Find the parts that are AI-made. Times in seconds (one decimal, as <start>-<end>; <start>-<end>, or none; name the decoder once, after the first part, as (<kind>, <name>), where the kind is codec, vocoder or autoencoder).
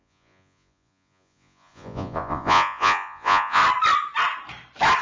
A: 0.0-3.6 (vocoder, Vocos)